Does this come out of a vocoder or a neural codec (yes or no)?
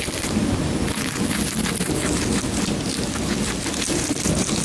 no